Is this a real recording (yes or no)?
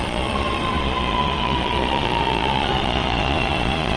no